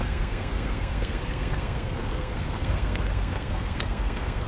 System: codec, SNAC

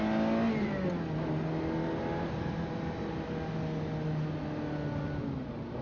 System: none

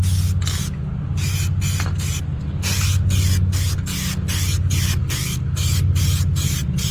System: none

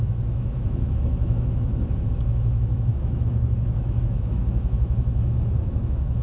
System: autoencoder, DAC-VAE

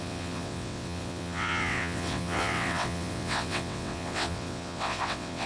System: vocoder, WaveNeXt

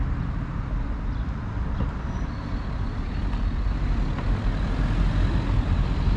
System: none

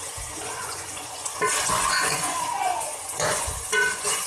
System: vocoder, Vocos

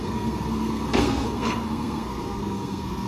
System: codec, SNAC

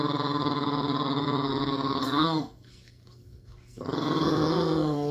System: codec, SNAC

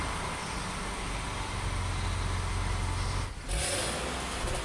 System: none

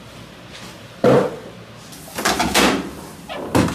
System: none